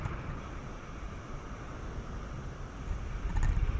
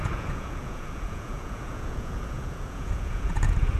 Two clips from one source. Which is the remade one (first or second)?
second